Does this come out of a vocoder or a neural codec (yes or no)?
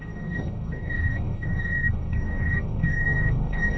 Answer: yes